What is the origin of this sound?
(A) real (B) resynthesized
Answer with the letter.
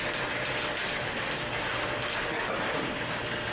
A